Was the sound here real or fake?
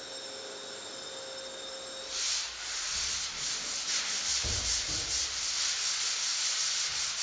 real